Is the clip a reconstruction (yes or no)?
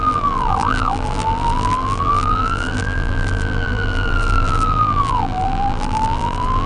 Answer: yes